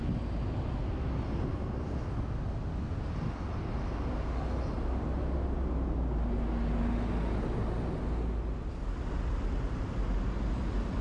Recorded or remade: recorded